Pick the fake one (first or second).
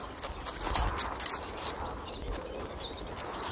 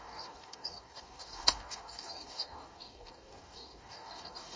second